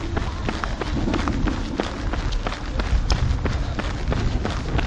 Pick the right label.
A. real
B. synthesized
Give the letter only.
A